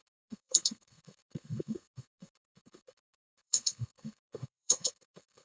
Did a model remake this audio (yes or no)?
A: yes